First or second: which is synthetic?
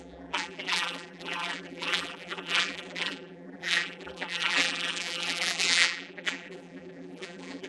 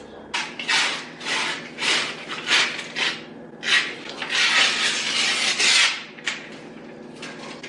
first